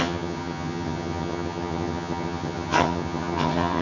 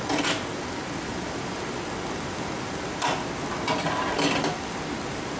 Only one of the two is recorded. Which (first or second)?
second